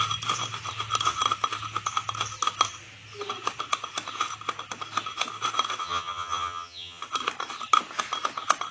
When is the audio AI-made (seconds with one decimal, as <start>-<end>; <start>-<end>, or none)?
5.8-7.0